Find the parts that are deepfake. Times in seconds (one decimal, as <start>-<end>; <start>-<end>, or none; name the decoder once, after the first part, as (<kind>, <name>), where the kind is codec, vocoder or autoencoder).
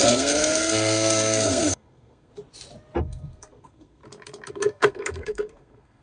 0.0-2.3 (codec, SNAC); 3.0-4.0; 4.5-6.0